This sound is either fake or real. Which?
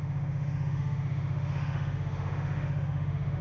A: fake